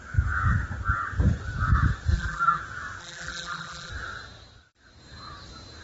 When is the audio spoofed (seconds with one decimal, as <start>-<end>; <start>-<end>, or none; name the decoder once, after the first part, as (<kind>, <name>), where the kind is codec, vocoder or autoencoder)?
2.1-2.6 (vocoder, BigVGAN v2); 3.0-3.9